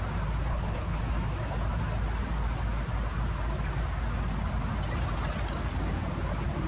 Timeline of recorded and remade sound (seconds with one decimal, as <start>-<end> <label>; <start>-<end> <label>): 0.0-0.5 recorded; 0.5-1.0 remade; 1.0-6.7 recorded

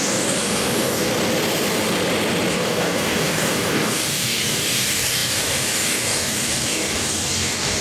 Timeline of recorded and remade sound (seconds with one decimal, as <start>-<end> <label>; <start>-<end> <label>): 0.0-1.1 remade; 1.1-2.5 recorded; 2.5-7.8 remade

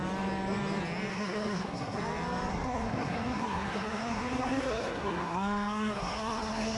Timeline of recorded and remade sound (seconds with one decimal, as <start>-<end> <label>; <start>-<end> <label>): 0.0-1.1 recorded; 1.1-2.0 remade; 2.0-2.5 recorded; 2.5-6.8 remade

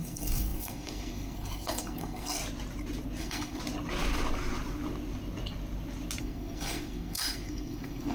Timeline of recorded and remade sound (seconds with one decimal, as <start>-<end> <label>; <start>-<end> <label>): 0.0-2.4 remade; 2.4-3.2 recorded; 3.2-3.6 remade; 3.6-6.2 recorded; 6.2-8.1 remade

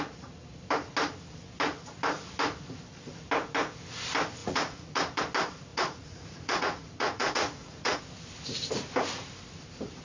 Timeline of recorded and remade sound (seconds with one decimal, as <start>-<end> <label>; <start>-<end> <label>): 0.0-4.4 recorded; 4.4-5.2 remade; 5.2-5.7 recorded; 5.7-8.0 remade; 8.0-10.0 recorded

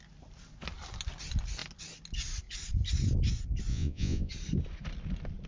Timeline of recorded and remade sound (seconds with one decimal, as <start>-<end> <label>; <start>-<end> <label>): 0.0-3.7 recorded; 3.7-4.3 remade; 4.3-5.5 recorded

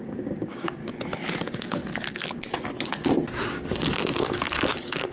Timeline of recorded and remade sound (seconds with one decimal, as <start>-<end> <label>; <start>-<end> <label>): 0.0-0.8 remade; 0.8-1.4 recorded; 1.4-1.8 remade; 1.8-3.5 recorded; 3.5-5.1 remade